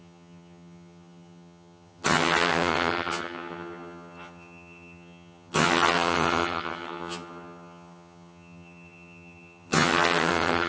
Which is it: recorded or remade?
remade